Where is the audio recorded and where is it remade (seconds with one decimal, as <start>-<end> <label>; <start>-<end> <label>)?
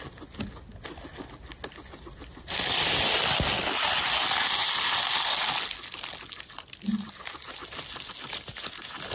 0.0-9.1 recorded